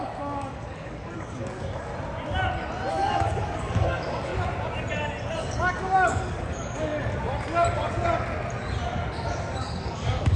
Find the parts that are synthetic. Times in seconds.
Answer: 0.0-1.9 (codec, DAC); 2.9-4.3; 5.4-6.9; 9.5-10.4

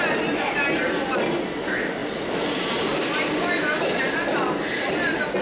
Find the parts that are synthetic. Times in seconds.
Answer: none